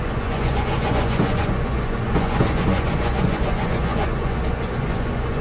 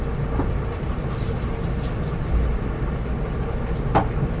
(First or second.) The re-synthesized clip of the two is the first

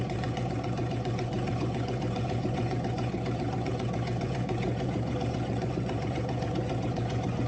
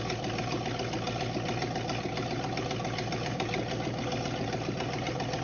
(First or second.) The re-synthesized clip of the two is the first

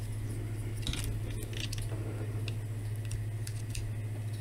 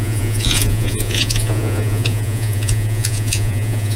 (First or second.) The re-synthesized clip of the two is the second